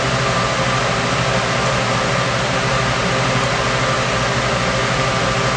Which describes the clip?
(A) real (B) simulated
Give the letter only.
A